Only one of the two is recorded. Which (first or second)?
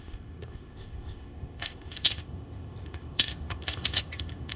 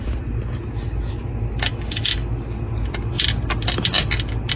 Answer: second